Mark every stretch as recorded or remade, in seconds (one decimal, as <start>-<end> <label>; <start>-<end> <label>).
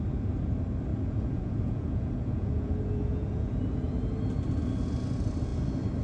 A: 0.0-0.9 recorded; 0.9-3.6 remade; 3.6-6.0 recorded